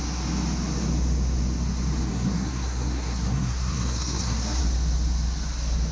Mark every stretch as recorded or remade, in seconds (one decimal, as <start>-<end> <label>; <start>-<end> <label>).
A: 0.0-2.1 recorded; 2.1-4.6 remade; 4.6-5.9 recorded